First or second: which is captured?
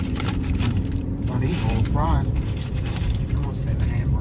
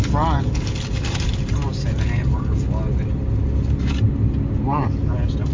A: second